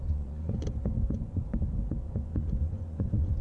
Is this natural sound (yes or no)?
no